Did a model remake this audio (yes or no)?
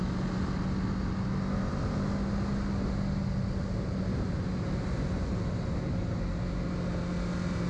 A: no